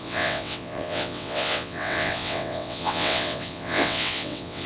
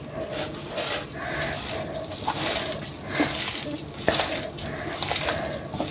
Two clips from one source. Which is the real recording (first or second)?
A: second